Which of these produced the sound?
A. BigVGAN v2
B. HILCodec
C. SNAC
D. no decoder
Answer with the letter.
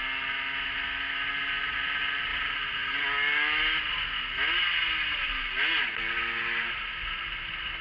D